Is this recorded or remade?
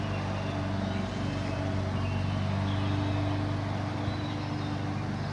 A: recorded